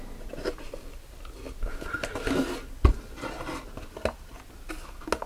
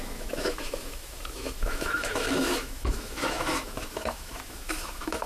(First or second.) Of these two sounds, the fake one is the second